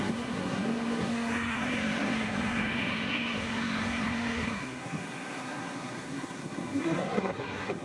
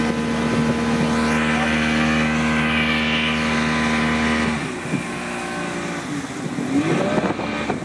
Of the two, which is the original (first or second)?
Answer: second